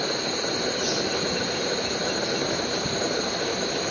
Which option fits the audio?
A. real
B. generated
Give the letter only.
B